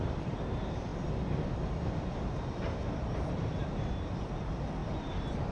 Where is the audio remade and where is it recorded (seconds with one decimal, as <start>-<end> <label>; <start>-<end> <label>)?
0.0-5.5 recorded

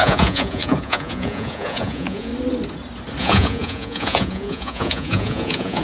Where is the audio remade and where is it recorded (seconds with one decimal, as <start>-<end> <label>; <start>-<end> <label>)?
0.0-2.3 remade; 2.3-3.2 recorded; 3.2-5.8 remade

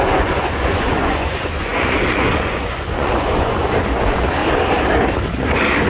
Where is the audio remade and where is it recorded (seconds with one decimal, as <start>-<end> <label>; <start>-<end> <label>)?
0.0-4.4 remade; 4.4-5.9 recorded

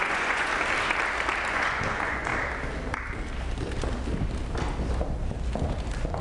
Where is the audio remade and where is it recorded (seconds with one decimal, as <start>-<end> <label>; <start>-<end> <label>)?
0.0-0.5 remade; 0.5-1.5 recorded; 1.5-2.3 remade; 2.3-6.2 recorded

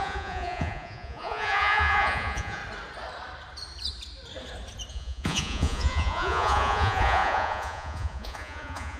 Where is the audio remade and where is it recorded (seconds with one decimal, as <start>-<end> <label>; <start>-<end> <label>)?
0.0-2.6 remade; 2.6-4.9 recorded; 4.9-9.0 remade

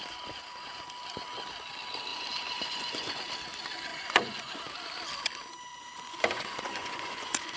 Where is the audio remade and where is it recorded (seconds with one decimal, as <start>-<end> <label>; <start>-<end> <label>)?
0.0-2.1 recorded; 2.1-3.2 remade; 3.2-3.9 recorded; 3.9-4.6 remade; 4.6-5.7 recorded; 5.7-7.6 remade

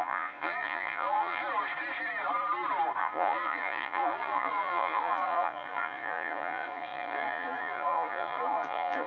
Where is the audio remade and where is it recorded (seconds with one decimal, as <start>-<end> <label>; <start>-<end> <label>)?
0.0-1.4 remade; 1.4-3.0 recorded; 3.0-9.1 remade